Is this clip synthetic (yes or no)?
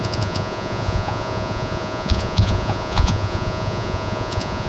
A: yes